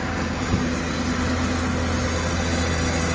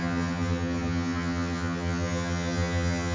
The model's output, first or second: second